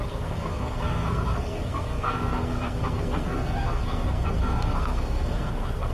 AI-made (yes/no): yes